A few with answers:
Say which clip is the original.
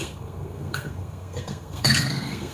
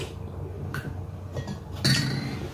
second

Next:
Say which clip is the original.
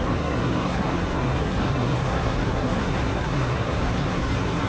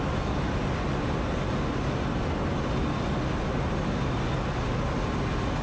second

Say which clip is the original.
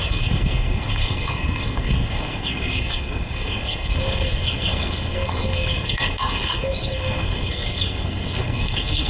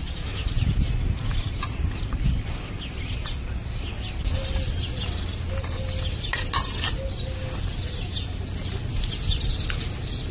second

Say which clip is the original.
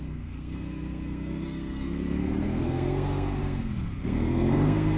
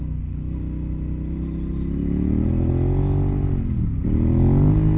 second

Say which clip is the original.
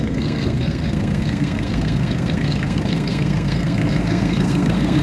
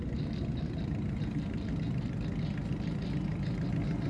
second